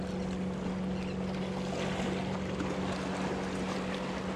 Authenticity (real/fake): real